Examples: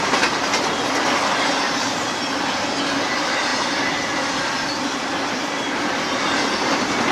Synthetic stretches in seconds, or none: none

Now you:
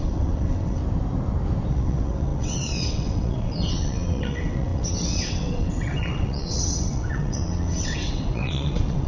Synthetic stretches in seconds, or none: 0.0-0.8; 1.7-9.1

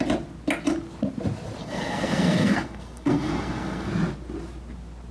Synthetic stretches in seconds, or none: 1.6-3.9

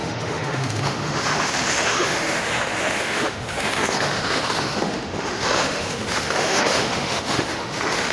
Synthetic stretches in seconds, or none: 0.0-8.1

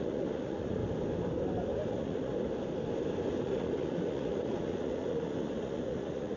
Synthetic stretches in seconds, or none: 0.0-0.8; 1.9-2.3; 3.4-6.4

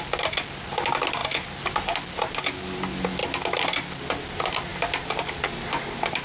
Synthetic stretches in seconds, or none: 1.2-2.2; 3.2-4.0; 4.7-5.3

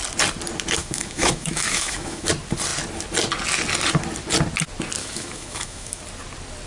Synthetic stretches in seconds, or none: 0.8-2.3; 5.0-6.0

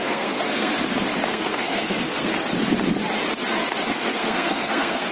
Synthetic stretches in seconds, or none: 0.0-0.7; 1.3-2.3; 3.9-5.1